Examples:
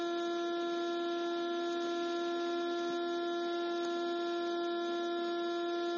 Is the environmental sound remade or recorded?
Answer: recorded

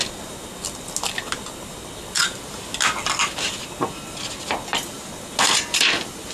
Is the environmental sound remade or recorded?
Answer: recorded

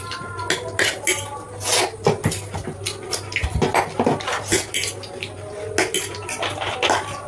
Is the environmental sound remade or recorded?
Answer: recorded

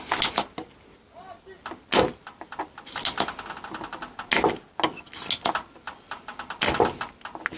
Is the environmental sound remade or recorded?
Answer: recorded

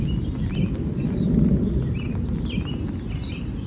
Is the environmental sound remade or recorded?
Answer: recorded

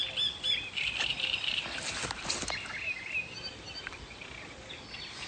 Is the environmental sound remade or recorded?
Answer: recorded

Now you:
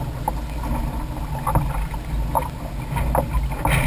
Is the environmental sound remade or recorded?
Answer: recorded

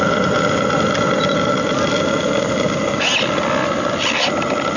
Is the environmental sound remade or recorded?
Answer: recorded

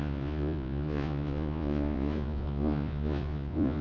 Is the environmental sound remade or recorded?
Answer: remade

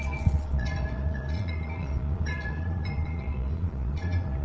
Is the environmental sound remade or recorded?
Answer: remade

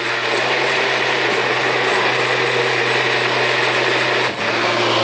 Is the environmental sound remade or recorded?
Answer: recorded